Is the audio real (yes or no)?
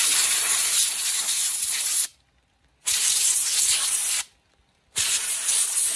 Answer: yes